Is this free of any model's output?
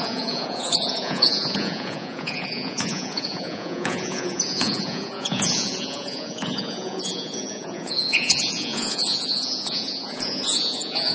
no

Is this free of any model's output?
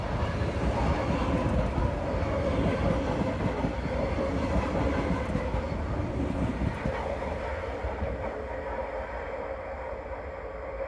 yes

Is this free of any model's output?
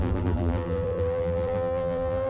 no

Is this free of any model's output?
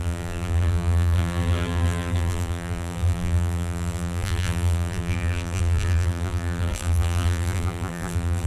no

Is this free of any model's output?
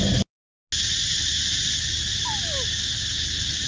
yes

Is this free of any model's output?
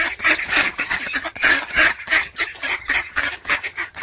no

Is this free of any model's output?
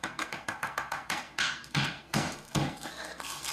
no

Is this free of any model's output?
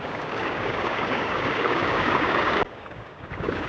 no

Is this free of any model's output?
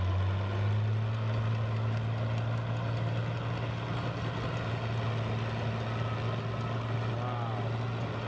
yes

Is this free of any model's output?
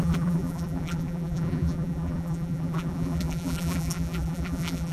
no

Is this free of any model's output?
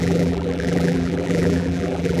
no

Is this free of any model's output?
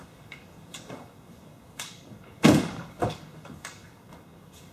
no